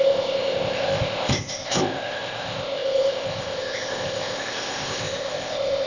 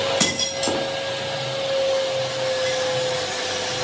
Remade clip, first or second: first